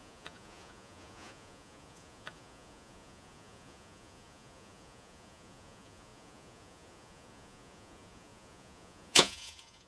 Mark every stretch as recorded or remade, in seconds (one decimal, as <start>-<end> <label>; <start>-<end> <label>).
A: 0.0-9.9 remade